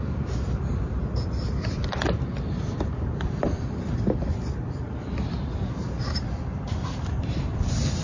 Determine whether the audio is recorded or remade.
recorded